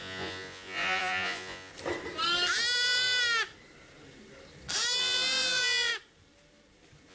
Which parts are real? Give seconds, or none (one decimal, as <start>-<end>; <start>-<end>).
1.7-5.0; 5.9-7.1